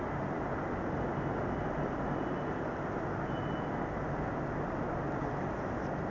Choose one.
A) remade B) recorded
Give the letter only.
B